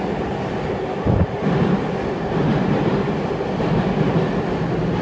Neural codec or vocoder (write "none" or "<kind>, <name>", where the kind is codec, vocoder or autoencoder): none